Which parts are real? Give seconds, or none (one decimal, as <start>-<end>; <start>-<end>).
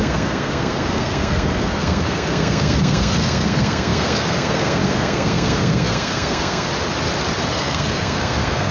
6.7-7.5